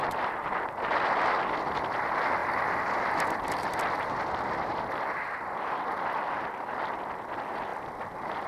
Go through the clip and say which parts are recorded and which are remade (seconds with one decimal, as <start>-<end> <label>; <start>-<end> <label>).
0.0-1.4 remade; 1.4-2.4 recorded; 2.4-6.8 remade; 6.8-7.7 recorded; 7.7-8.5 remade